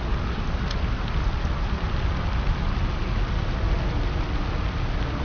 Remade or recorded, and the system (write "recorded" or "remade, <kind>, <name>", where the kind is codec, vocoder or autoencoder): recorded